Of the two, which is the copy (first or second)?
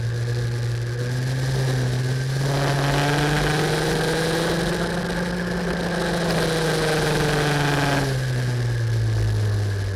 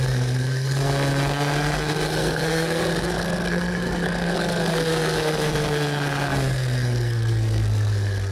second